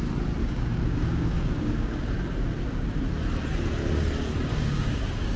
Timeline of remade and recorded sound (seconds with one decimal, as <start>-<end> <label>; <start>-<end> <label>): 0.0-0.4 recorded; 0.4-2.1 remade; 2.1-4.5 recorded; 4.5-5.4 remade